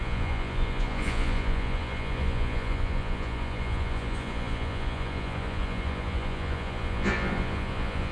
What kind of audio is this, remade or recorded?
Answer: remade